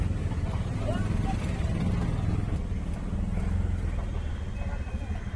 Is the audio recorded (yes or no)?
yes